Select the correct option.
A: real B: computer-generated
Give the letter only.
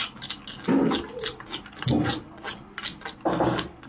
A